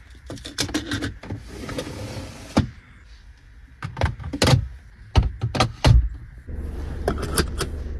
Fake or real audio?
real